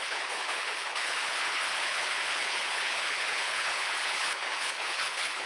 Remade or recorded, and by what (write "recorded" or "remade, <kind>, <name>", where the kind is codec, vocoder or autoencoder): remade, codec, HILCodec